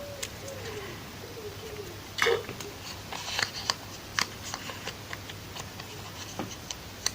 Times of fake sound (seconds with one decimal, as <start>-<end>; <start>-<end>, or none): none